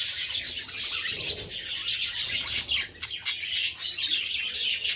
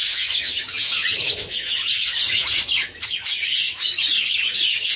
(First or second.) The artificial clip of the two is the second